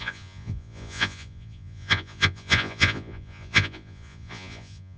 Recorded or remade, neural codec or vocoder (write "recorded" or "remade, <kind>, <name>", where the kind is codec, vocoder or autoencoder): remade, vocoder, Vocos